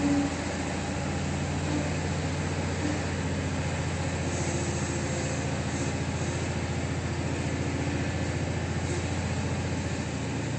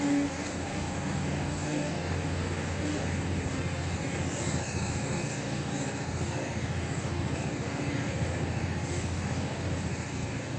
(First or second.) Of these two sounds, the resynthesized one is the second